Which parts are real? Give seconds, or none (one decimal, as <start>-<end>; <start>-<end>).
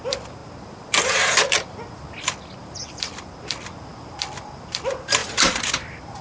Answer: 0.0-6.2